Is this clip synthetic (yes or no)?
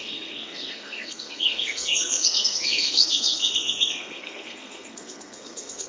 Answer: yes